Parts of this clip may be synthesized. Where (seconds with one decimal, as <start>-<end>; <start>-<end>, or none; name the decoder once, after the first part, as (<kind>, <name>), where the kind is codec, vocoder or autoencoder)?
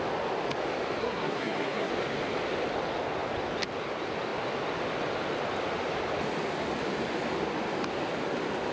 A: 1.0-1.9 (codec, SNAC)